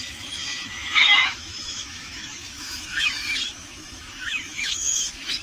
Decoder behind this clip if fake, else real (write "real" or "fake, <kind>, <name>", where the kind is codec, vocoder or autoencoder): fake, autoencoder, DAC-VAE